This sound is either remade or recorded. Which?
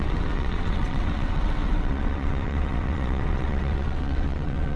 remade